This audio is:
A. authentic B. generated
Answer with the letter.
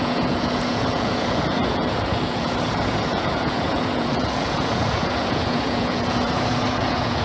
B